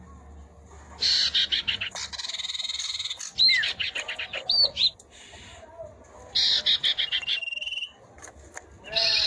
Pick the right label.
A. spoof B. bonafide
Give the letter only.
B